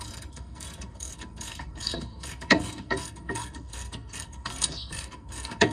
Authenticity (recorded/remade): remade